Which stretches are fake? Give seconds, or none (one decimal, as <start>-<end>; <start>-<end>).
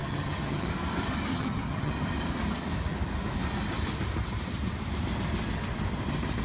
0.0-0.7; 1.3-1.9